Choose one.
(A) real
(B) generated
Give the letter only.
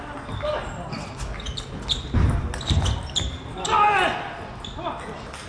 A